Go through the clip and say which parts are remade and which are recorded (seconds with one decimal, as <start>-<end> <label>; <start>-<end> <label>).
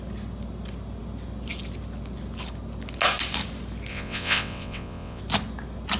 0.0-3.9 recorded; 3.9-5.2 remade; 5.2-6.0 recorded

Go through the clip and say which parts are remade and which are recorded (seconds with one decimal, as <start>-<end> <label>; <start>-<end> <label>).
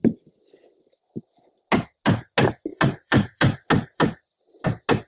0.0-2.7 recorded; 2.7-4.6 remade; 4.6-5.1 recorded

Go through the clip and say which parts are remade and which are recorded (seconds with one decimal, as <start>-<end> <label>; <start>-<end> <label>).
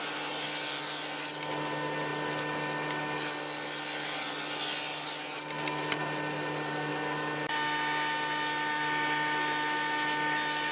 0.0-10.7 recorded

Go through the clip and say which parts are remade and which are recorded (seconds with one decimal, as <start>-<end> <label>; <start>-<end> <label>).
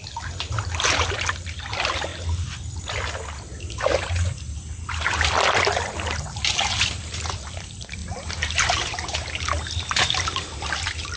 0.0-11.2 recorded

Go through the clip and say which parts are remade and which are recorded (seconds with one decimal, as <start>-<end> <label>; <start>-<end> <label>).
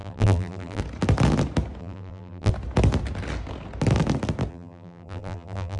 0.0-0.8 remade; 0.8-1.8 recorded; 1.8-2.5 remade; 2.5-4.5 recorded; 4.5-5.8 remade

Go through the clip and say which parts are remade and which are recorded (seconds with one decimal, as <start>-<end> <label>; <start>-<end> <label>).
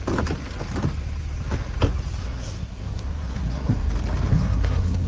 0.0-2.2 recorded; 2.2-3.9 remade; 3.9-4.3 recorded; 4.3-5.1 remade